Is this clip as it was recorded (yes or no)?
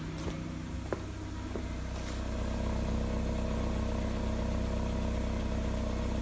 yes